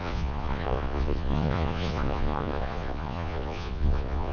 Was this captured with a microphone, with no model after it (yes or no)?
no